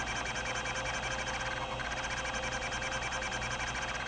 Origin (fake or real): real